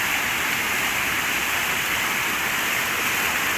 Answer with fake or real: real